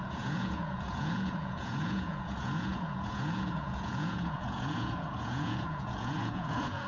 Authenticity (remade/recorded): remade